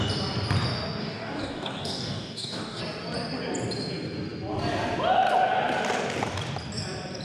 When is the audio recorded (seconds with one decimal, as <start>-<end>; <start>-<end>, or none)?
0.0-1.0; 2.8-7.2